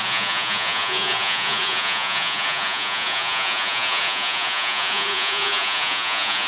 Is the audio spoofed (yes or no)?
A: yes